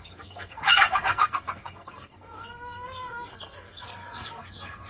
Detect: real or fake fake